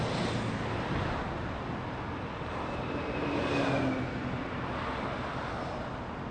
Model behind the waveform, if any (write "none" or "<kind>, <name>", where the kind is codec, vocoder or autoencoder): none